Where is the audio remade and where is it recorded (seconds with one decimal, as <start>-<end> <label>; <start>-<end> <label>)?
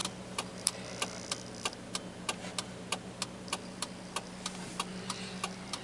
0.0-5.8 recorded